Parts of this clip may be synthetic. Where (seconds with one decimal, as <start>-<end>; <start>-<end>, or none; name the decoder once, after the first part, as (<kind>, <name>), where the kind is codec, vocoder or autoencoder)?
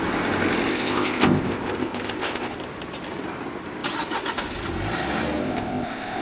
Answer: 0.7-2.5 (codec, ZipCodec); 5.4-6.2